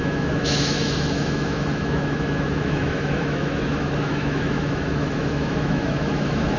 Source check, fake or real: fake